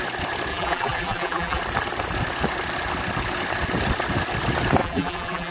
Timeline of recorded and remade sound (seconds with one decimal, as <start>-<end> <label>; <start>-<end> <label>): 0.0-0.5 recorded; 0.5-1.6 remade; 1.6-4.8 recorded; 4.8-5.5 remade